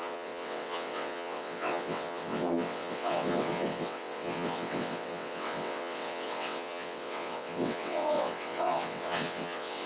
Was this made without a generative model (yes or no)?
no